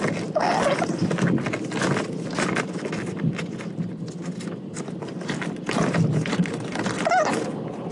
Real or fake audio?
real